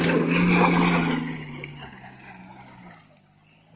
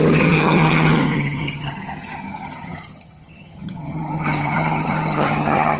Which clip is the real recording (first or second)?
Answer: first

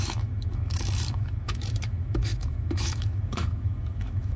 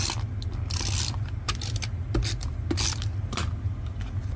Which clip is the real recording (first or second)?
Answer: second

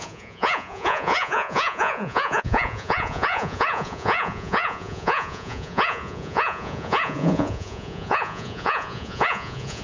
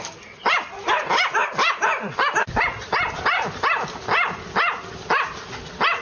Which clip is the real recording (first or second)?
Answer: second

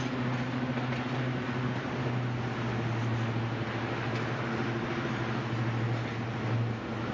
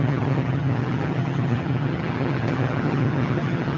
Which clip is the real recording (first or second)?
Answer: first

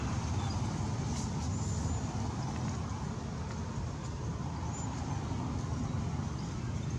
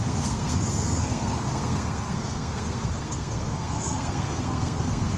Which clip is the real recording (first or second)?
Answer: first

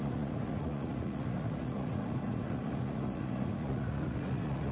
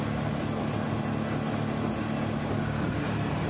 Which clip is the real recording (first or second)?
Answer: second